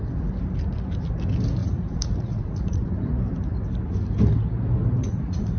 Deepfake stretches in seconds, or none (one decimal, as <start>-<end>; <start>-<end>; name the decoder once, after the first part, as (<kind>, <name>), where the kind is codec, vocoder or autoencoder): 1.6-3.0 (vocoder, Vocos); 5.0-5.6

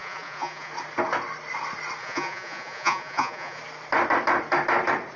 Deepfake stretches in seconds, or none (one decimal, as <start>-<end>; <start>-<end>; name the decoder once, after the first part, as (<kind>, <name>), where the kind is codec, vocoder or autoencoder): 0.0-0.7 (vocoder, Vocos); 2.0-3.6

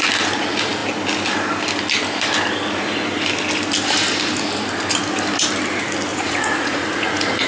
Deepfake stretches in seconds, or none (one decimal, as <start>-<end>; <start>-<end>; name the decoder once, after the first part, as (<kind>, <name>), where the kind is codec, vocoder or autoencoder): 6.1-7.5 (vocoder, Vocos)

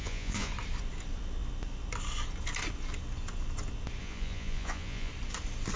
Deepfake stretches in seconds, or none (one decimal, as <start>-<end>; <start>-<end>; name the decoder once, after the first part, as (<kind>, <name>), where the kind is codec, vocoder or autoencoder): 0.0-0.5 (vocoder, Vocos); 4.0-5.1

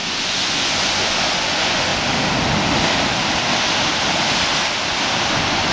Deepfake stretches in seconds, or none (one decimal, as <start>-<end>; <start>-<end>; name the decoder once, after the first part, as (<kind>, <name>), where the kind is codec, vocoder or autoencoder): 0.0-1.9 (vocoder, Vocos); 5.3-5.7